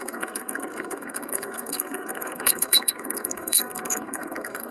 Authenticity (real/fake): fake